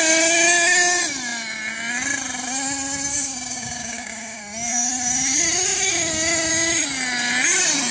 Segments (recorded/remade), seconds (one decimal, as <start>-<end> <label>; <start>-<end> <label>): 0.0-3.1 recorded; 3.1-4.4 remade; 4.4-7.9 recorded